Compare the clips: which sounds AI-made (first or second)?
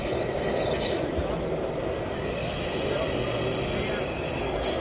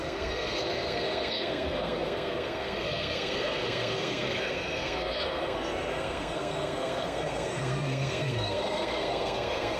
second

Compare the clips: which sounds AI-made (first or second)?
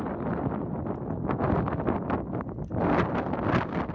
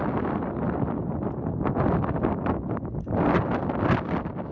second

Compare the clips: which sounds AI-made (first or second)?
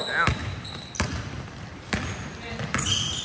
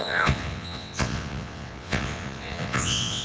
second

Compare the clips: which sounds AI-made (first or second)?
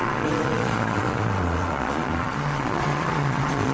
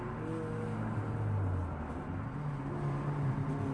first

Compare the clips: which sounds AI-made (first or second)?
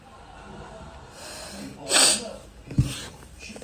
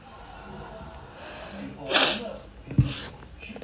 first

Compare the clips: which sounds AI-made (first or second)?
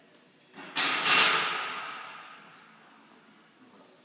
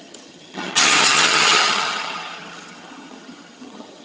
second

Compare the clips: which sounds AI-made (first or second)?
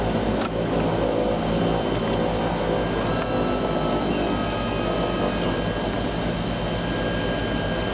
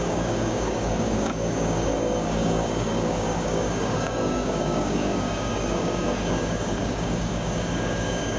second